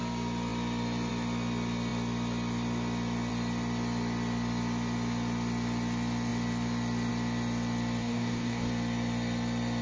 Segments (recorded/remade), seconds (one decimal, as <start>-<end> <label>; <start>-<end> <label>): 0.0-8.0 recorded; 8.0-8.7 remade; 8.7-9.8 recorded

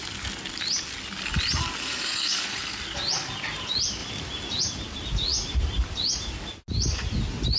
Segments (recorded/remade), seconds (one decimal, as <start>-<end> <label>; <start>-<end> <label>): 0.0-1.8 recorded; 1.8-2.8 remade; 2.8-7.6 recorded

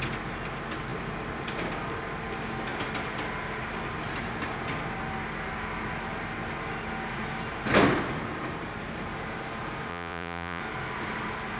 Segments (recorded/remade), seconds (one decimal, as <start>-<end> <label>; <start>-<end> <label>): 0.0-9.9 recorded; 9.9-10.6 remade; 10.6-11.6 recorded

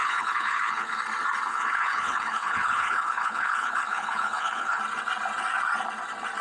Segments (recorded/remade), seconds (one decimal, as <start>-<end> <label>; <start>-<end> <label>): 0.0-1.0 remade; 1.0-1.5 recorded; 1.5-4.8 remade; 4.8-6.4 recorded

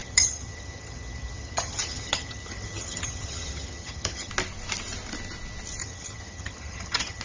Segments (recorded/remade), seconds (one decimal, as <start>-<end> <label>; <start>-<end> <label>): 0.0-4.3 remade; 4.3-5.8 recorded; 5.8-7.2 remade

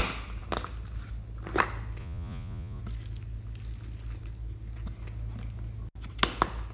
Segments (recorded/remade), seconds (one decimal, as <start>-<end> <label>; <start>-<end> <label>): 0.0-2.0 recorded; 2.0-2.8 remade; 2.8-6.7 recorded